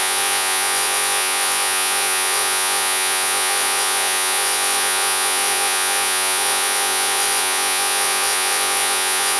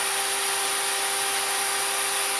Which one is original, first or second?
second